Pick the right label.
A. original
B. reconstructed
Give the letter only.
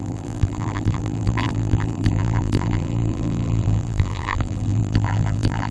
B